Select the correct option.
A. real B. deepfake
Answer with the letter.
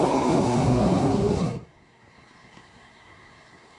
B